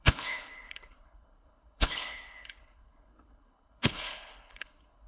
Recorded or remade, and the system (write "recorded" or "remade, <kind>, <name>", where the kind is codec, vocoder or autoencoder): remade, codec, HILCodec